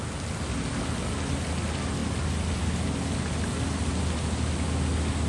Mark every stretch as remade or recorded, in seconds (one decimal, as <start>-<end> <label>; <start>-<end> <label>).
0.0-2.0 recorded; 2.0-2.6 remade; 2.6-5.3 recorded